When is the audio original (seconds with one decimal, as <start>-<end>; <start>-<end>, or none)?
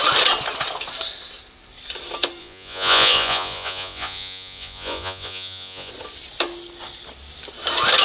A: 0.0-2.4; 5.9-8.0